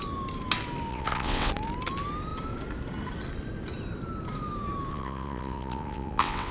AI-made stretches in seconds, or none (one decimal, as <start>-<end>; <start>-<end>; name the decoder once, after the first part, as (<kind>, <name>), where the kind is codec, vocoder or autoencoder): 0.9-1.5 (vocoder, WaveNeXt); 4.9-6.5